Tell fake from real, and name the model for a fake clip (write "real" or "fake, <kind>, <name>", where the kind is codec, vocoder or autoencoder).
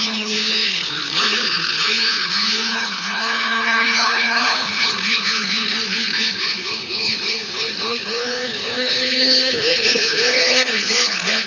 fake, codec, HILCodec